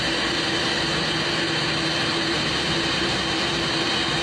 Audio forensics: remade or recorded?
recorded